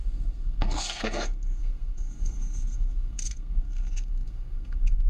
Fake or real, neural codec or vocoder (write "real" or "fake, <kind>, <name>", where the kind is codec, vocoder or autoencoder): fake, codec, SNAC